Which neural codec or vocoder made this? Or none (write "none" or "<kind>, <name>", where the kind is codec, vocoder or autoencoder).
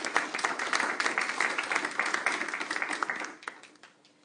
none